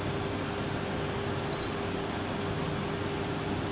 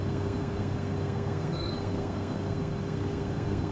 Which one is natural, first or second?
first